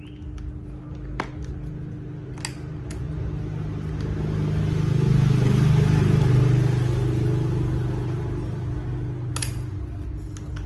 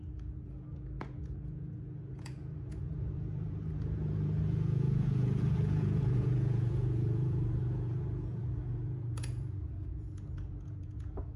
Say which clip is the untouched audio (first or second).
first